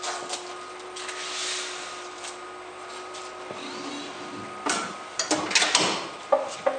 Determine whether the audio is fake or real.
real